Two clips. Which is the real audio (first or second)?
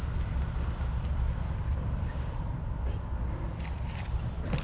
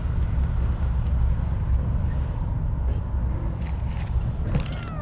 second